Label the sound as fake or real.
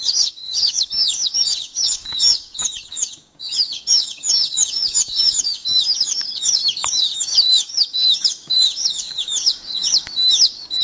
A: fake